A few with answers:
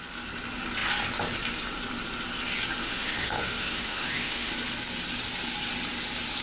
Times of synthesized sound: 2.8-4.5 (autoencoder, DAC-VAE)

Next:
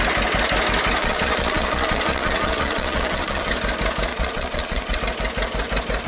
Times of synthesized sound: 1.0-3.5 (vocoder, Vocos); 4.1-5.0

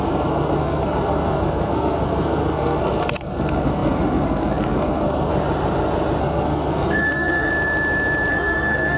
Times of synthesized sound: 0.0-5.3 (codec, SNAC); 6.2-7.5; 8.3-9.0

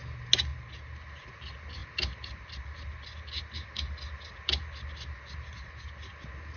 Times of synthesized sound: none